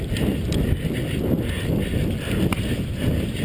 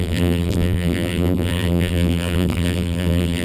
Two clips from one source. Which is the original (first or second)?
first